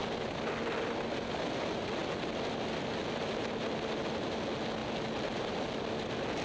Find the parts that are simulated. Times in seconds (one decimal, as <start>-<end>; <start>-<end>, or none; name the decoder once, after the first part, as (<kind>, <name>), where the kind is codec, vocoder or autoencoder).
none